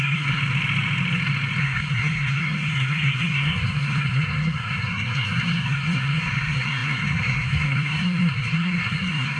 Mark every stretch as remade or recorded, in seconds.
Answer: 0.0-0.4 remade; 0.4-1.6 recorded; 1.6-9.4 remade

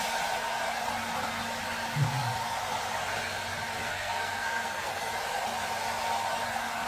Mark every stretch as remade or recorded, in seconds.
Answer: 0.0-3.8 recorded; 3.8-5.1 remade; 5.1-6.9 recorded

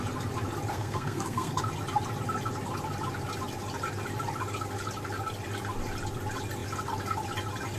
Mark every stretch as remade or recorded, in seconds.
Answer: 0.0-0.7 recorded; 0.7-1.6 remade; 1.6-7.8 recorded

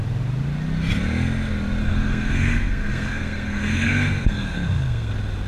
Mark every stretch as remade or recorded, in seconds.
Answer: 0.0-1.8 recorded; 1.8-5.1 remade; 5.1-5.5 recorded